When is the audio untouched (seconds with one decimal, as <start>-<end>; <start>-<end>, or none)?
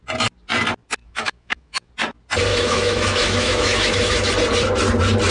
0.0-1.0; 1.9-2.5; 4.3-5.3